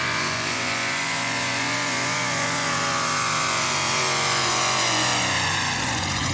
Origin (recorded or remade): remade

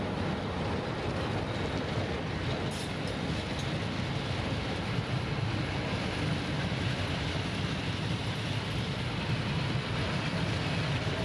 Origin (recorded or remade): recorded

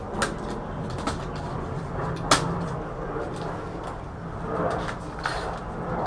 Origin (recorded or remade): recorded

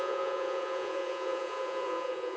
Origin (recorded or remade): remade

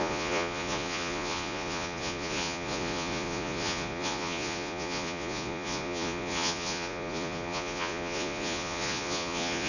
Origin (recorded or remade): remade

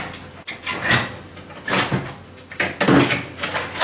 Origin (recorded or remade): recorded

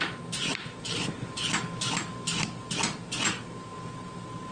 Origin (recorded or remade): recorded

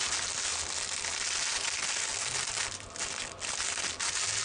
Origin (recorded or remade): recorded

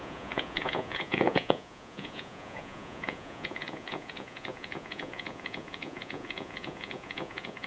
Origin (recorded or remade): remade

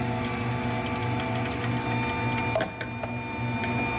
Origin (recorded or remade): recorded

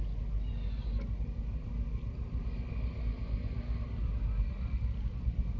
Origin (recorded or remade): recorded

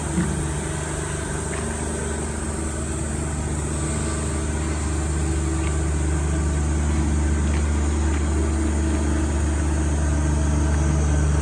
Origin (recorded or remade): recorded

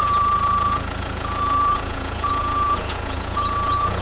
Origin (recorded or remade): remade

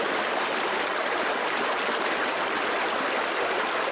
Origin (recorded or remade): recorded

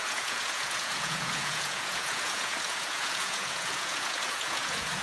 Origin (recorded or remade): remade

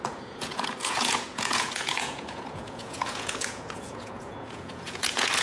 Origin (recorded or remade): remade